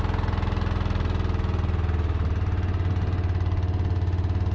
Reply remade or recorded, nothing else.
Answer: recorded